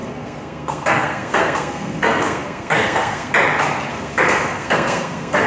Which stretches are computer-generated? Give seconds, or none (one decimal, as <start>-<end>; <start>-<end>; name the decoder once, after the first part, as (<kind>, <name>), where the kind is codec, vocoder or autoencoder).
0.0-3.3 (codec, SNAC); 3.9-5.5